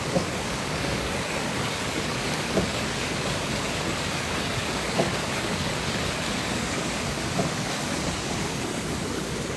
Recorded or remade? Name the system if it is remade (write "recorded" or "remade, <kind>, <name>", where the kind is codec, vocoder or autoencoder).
remade, codec, DAC